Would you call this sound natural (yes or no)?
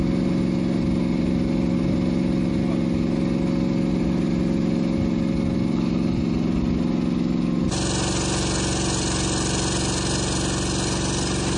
yes